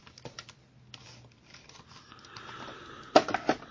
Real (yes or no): yes